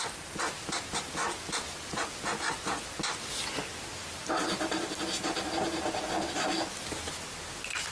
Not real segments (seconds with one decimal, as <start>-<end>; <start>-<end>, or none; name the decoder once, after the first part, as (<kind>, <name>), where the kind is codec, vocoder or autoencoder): 4.0-5.0 (vocoder, BigVGAN v2)